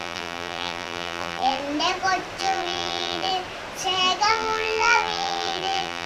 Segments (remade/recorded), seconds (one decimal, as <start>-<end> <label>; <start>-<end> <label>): 0.0-1.6 remade; 1.6-2.4 recorded; 2.4-3.3 remade; 3.3-4.3 recorded; 4.3-6.1 remade